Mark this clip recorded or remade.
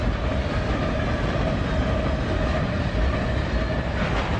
recorded